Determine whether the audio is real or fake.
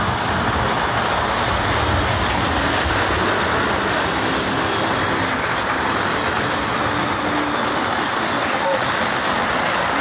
real